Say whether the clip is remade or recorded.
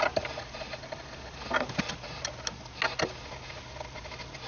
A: recorded